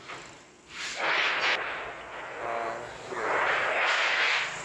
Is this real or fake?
real